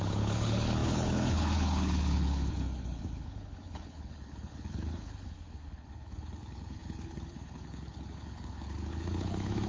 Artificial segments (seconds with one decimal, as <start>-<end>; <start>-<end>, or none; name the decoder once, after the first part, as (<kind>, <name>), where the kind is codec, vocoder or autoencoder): 0.0-9.7 (codec, HILCodec)